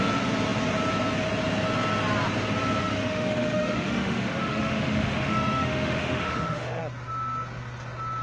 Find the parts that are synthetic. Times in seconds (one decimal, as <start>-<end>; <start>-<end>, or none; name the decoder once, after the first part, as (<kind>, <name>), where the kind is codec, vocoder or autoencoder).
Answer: 2.8-6.8 (autoencoder, DAC-VAE)